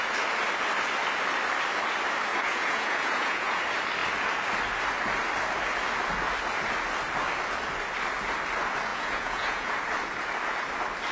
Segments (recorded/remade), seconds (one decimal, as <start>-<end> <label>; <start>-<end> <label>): 0.0-2.3 recorded; 2.3-3.6 remade; 3.6-8.9 recorded; 8.9-9.7 remade; 9.7-11.1 recorded